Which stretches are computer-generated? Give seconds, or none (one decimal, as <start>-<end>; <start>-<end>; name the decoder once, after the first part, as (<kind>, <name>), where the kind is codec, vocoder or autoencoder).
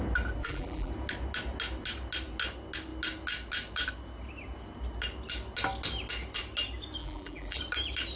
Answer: 0.4-0.9 (vocoder, BigVGAN v2); 7.0-7.6